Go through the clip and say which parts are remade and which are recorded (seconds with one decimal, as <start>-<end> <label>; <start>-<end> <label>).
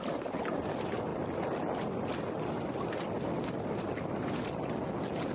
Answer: 0.0-5.3 recorded